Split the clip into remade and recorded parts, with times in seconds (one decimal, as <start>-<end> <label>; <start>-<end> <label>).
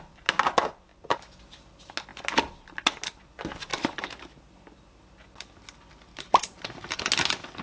0.0-3.7 recorded; 3.7-4.4 remade; 4.4-6.1 recorded; 6.1-7.0 remade; 7.0-7.6 recorded